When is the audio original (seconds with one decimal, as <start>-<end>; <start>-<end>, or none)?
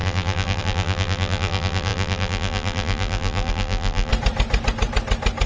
4.1-5.5